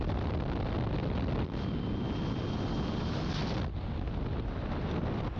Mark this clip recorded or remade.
recorded